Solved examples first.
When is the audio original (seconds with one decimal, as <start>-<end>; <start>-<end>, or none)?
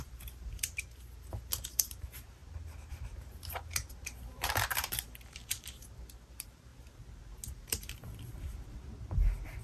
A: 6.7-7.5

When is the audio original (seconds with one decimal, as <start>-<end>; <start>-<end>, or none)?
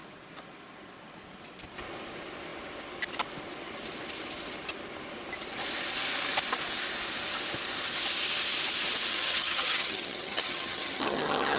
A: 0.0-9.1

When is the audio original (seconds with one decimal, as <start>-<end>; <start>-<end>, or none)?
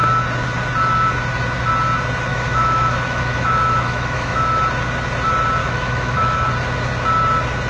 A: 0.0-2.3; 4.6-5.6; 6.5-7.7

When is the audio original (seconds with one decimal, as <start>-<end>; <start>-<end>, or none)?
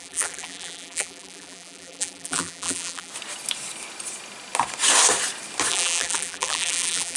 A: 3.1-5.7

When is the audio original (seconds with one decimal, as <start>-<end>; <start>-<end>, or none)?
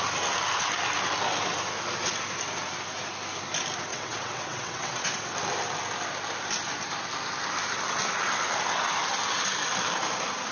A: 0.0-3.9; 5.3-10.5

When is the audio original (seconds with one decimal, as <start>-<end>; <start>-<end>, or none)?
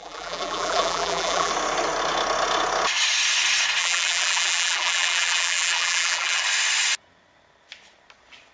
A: 1.5-3.8; 6.4-8.5